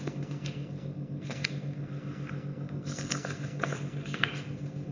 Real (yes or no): no